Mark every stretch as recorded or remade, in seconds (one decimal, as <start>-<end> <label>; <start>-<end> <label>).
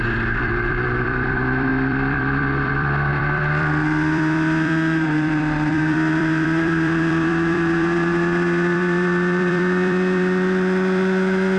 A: 0.0-11.6 remade